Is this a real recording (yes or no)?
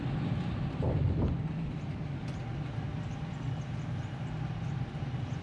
yes